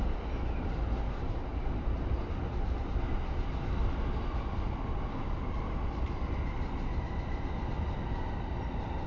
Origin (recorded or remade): recorded